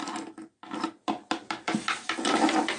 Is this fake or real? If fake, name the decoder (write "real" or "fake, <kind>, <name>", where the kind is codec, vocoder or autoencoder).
real